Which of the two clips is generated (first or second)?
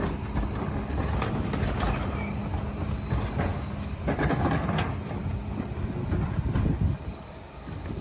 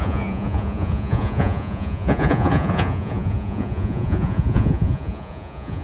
second